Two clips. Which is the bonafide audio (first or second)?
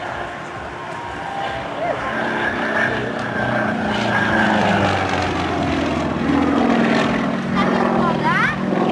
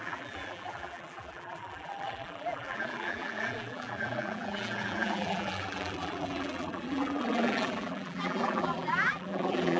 first